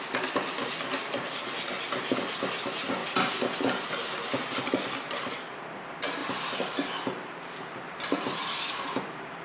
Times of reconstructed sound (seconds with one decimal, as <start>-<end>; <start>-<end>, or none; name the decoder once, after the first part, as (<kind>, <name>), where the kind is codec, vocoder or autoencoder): none